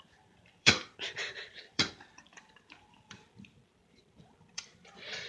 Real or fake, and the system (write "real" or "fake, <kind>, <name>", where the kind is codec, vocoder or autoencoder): fake, vocoder, BigVGAN v2